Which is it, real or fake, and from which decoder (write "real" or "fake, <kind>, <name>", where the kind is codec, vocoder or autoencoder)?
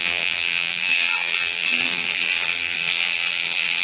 fake, vocoder, BigVGAN v2